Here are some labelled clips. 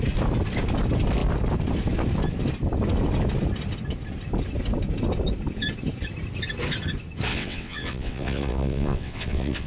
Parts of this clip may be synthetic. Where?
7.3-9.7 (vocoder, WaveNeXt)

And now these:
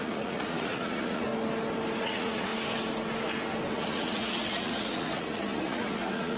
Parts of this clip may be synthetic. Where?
0.0-1.3 (vocoder, Vocos); 2.0-2.5; 3.7-6.4

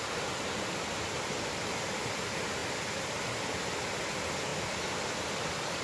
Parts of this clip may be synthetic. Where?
none

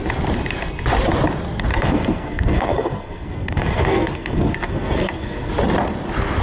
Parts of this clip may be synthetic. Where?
1.7-5.5 (codec, SNAC)